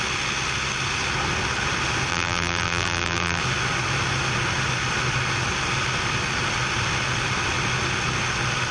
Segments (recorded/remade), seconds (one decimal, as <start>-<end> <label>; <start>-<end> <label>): 0.0-2.1 recorded; 2.1-3.4 remade; 3.4-8.7 recorded